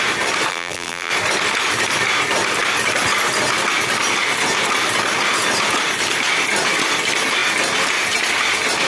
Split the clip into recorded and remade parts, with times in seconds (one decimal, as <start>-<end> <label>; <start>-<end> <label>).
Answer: 0.0-0.5 recorded; 0.5-1.1 remade; 1.1-8.9 recorded